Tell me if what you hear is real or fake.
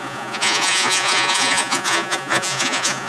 fake